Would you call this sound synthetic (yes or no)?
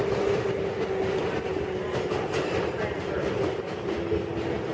no